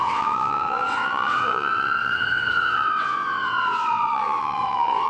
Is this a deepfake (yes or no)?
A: yes